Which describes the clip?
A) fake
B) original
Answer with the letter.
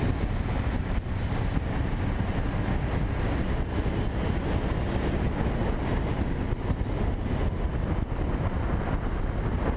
B